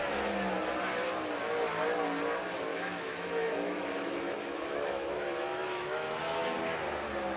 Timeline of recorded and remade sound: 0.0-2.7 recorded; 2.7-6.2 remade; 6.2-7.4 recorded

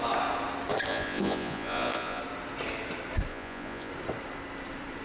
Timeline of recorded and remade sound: 0.0-0.9 recorded; 0.9-2.2 remade; 2.2-3.3 recorded; 3.3-3.9 remade; 3.9-5.0 recorded

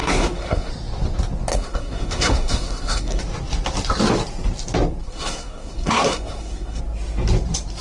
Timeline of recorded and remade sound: 0.0-0.7 remade; 0.7-1.5 recorded; 1.5-3.2 remade; 3.2-5.0 recorded; 5.0-6.8 remade; 6.8-7.8 recorded

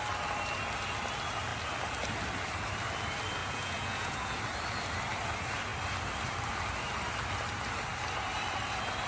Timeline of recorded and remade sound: 0.0-3.4 recorded; 3.4-4.4 remade; 4.4-9.1 recorded

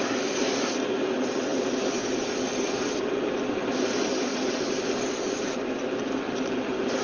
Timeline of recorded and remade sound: 0.0-7.0 recorded

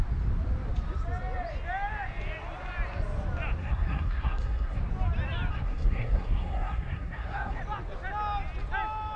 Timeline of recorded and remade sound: 0.0-3.6 recorded; 3.6-4.8 remade; 4.8-5.5 recorded; 5.5-7.6 remade; 7.6-9.2 recorded